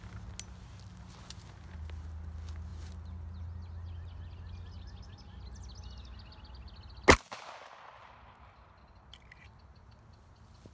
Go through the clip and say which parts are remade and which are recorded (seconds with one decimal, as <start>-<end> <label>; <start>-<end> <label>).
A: 0.0-10.7 recorded